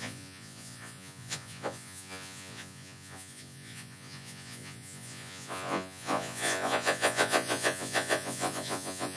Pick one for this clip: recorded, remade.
remade